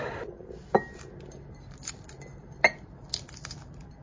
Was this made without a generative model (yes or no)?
yes